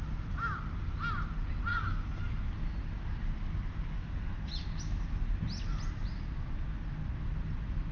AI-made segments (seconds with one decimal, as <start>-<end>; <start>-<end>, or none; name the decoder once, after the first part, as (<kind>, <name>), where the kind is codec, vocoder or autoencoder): 1.7-2.2 (codec, DAC)